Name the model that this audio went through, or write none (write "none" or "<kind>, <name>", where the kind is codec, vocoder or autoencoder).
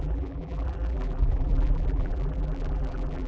vocoder, BigVGAN v2